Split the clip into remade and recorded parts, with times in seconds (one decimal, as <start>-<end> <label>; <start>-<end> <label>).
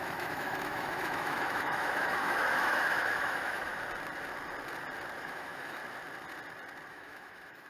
0.0-3.7 remade; 3.7-5.2 recorded; 5.2-5.8 remade; 5.8-6.9 recorded; 6.9-7.7 remade